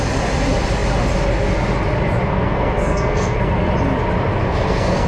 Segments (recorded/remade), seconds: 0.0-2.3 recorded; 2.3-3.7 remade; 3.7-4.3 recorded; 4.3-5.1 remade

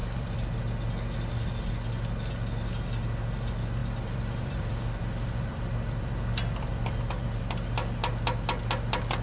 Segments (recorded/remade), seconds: 0.0-0.6 remade; 0.6-3.8 recorded; 3.8-7.4 remade; 7.4-9.2 recorded

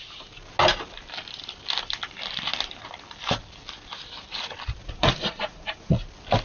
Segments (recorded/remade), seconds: 0.0-4.8 recorded; 4.8-6.0 remade; 6.0-6.4 recorded

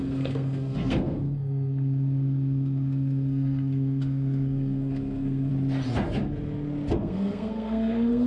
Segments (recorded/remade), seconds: 0.0-5.5 remade; 5.5-6.9 recorded; 6.9-8.3 remade

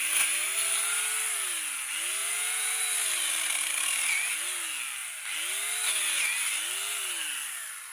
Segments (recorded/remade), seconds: 0.0-2.2 recorded; 2.2-2.8 remade; 2.8-7.9 recorded

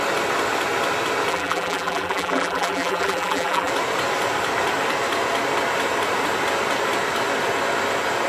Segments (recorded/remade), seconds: 0.0-1.3 recorded; 1.3-3.7 remade; 3.7-8.3 recorded

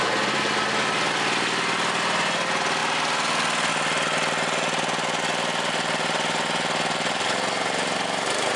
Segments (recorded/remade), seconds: 0.0-8.6 recorded

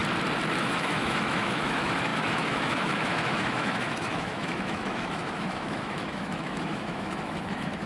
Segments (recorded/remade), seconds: 0.0-0.6 recorded; 0.6-7.9 remade